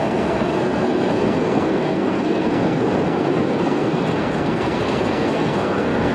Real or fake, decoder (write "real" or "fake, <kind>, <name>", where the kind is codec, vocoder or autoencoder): fake, codec, SNAC